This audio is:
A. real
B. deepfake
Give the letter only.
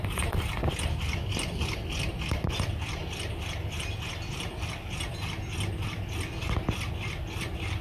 A